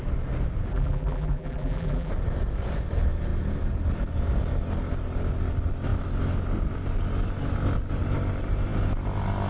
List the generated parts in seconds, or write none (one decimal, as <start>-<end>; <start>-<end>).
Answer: 0.7-2.1